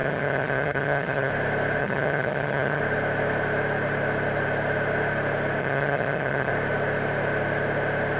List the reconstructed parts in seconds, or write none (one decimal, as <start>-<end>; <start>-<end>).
0.0-1.3; 1.8-2.8; 5.6-6.5